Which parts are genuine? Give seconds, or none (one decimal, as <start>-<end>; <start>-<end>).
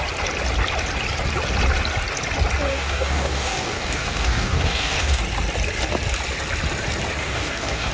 0.0-2.7; 5.2-7.2